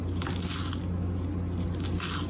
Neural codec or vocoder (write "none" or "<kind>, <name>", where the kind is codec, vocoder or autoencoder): none